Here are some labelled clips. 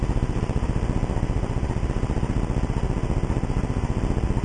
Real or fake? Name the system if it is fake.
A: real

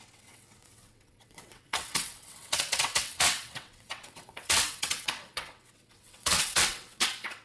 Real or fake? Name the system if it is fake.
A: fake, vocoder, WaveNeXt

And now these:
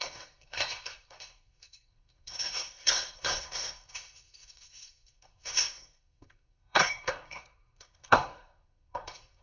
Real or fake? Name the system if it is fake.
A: fake, codec, SNAC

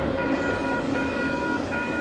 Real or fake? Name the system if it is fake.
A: fake, codec, DAC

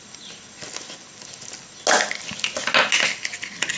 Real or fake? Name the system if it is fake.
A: real